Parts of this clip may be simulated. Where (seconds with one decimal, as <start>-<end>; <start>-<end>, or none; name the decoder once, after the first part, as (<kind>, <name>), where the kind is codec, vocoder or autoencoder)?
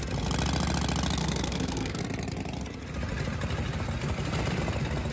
1.2-2.0 (codec, SNAC)